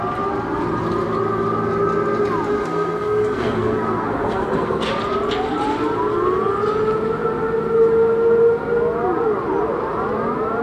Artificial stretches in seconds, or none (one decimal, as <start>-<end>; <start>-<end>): 2.6-4.9